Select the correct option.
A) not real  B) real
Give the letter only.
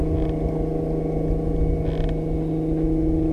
B